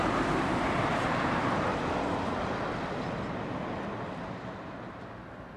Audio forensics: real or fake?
real